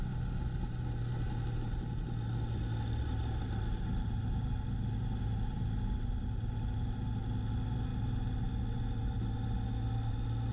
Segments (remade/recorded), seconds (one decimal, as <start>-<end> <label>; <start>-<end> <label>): 0.0-10.5 recorded